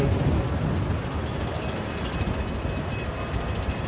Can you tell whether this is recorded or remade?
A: recorded